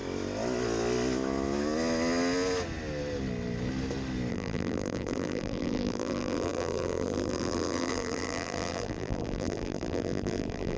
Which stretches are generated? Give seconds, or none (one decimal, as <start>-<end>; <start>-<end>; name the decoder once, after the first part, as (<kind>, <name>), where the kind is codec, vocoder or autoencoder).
4.3-10.8 (vocoder, BigVGAN v2)